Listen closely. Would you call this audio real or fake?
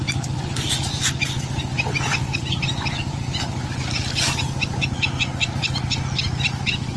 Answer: real